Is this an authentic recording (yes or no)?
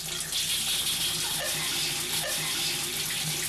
yes